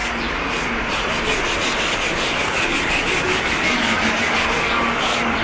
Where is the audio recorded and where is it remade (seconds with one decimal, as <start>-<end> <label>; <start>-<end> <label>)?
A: 0.0-1.9 recorded; 1.9-5.4 remade